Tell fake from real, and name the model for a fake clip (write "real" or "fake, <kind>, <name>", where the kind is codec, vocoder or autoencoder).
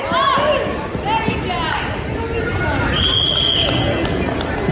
real